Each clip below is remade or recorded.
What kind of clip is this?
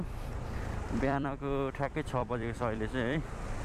remade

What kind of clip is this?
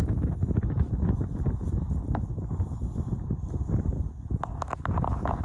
recorded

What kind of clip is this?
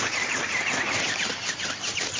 recorded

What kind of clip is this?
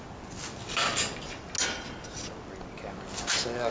recorded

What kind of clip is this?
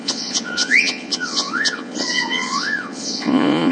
remade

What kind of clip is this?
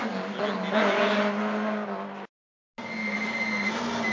recorded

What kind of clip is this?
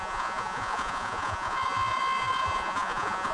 remade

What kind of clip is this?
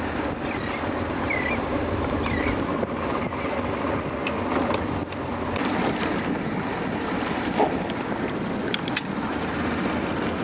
recorded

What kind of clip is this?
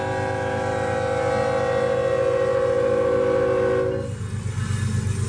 recorded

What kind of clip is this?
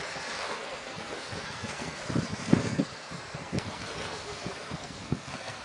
remade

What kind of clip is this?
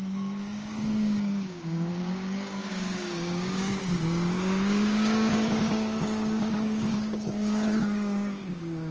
remade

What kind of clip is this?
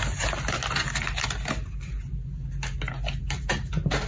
recorded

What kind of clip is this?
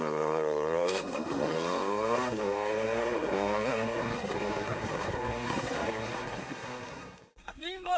remade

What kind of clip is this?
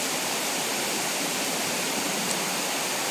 remade